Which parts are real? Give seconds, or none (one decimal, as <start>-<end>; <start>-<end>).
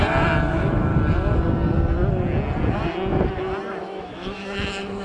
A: 0.0-0.5; 0.9-3.8